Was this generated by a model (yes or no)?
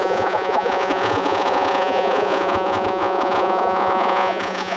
yes